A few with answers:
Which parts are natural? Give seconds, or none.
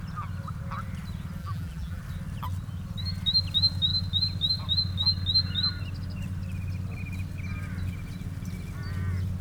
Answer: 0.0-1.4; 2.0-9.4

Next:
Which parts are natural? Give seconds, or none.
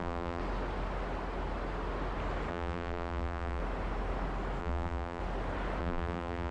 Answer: 0.4-2.5; 3.6-4.6; 5.2-5.8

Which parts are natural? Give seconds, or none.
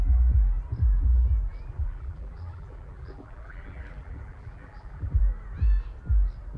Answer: 0.0-1.5; 5.2-6.6